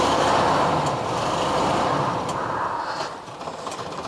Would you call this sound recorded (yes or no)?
yes